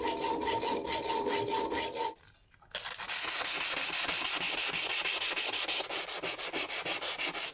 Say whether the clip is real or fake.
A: real